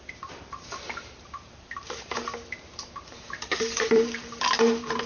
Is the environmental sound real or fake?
fake